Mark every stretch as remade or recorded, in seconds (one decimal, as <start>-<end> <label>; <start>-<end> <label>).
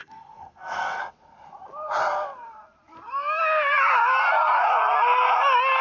0.0-1.0 remade; 1.0-5.8 recorded